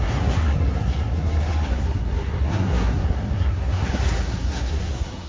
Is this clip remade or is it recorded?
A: remade